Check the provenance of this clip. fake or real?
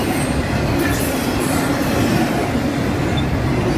real